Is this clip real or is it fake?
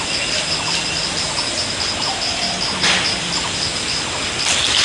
real